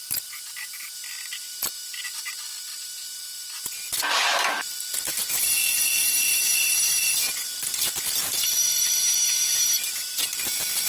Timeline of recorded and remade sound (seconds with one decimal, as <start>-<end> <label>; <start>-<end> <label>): 0.0-10.9 remade